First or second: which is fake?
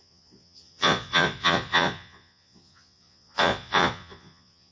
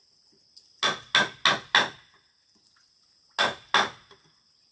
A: first